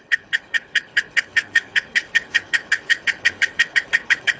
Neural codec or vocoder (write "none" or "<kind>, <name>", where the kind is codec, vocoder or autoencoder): codec, HILCodec